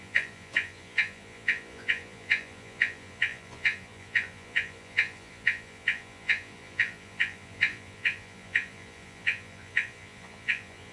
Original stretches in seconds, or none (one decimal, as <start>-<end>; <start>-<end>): none